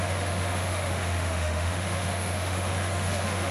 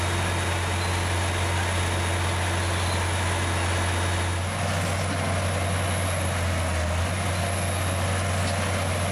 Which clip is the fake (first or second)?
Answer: first